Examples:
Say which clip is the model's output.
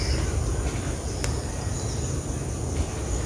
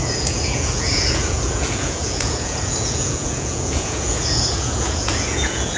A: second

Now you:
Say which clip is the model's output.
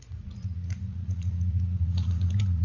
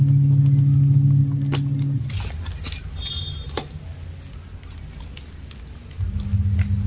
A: first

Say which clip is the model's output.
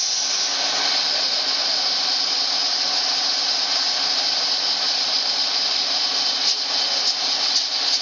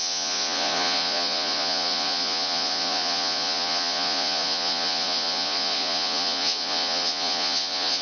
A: second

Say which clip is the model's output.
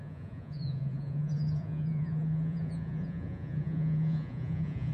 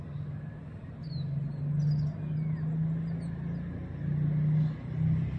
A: first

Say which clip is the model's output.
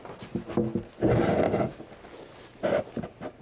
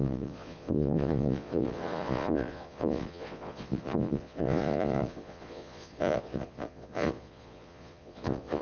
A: second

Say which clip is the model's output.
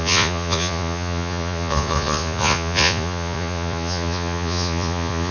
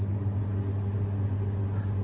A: first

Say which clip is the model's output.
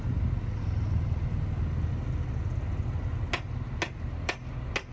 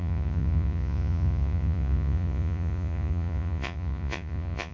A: second